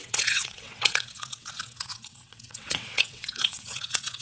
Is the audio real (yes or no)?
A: no